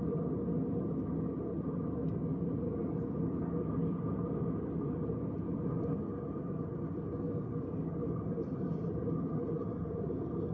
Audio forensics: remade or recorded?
recorded